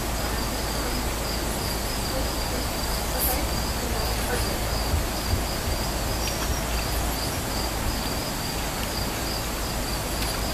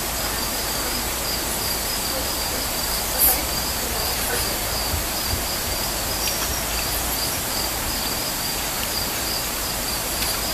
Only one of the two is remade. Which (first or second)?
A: second